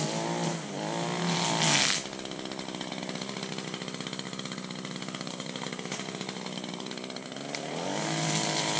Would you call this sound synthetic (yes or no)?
no